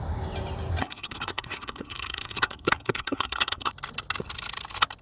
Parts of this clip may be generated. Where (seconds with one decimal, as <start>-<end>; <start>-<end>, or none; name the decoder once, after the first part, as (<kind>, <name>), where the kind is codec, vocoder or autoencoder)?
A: 0.8-3.7 (codec, SNAC)